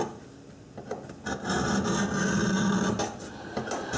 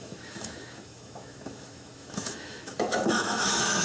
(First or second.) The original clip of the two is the first